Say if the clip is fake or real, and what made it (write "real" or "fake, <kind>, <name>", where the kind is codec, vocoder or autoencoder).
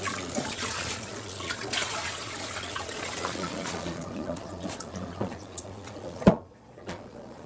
fake, vocoder, Vocos